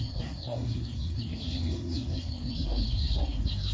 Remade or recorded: remade